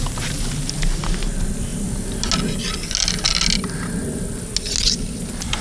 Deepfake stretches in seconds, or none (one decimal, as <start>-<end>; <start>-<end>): none